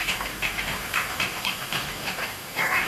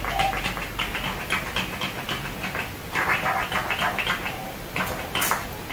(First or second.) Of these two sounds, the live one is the second